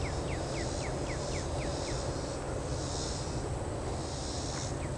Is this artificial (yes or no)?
no